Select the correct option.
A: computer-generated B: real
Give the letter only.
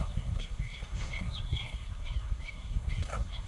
A